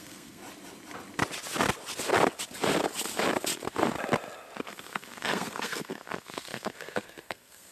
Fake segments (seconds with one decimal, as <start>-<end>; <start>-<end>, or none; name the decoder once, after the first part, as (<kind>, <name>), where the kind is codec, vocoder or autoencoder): 0.0-0.4 (codec, SNAC); 4.6-7.7